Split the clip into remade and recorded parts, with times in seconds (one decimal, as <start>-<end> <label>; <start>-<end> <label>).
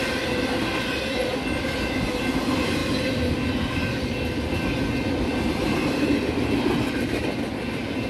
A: 0.0-8.1 recorded